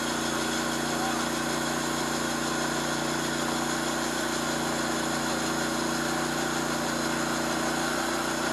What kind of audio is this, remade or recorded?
recorded